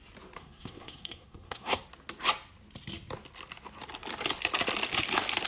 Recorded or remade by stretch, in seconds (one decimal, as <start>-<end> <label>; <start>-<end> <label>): 0.0-0.4 recorded; 0.4-1.8 remade; 1.8-5.5 recorded

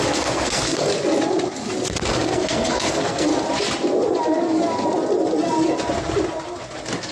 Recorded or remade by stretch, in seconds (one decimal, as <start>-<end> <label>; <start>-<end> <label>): 0.0-0.9 remade; 0.9-2.1 recorded; 2.1-3.3 remade; 3.3-7.1 recorded

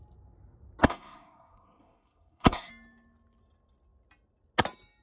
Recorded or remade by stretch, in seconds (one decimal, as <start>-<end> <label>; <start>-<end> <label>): 0.0-0.8 recorded; 0.8-2.7 remade; 2.7-5.0 recorded

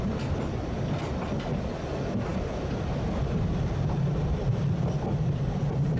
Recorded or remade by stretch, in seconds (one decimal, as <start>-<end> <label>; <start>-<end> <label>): 0.0-6.0 recorded